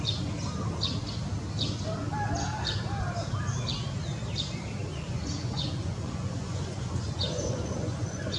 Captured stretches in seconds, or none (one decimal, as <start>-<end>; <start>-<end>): 0.0-4.9